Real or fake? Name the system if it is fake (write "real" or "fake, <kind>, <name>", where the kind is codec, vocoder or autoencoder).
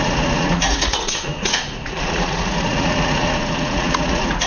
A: fake, vocoder, Vocos